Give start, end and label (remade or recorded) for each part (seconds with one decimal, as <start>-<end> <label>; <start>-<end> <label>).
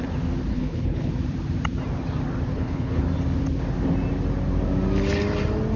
0.0-0.5 recorded; 0.5-1.1 remade; 1.1-2.5 recorded; 2.5-3.0 remade; 3.0-5.8 recorded